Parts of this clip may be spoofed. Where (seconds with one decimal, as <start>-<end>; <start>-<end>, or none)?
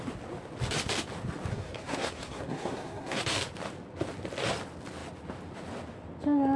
1.5-3.2